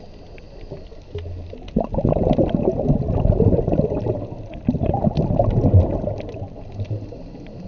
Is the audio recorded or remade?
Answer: recorded